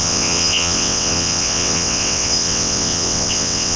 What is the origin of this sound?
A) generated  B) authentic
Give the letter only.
A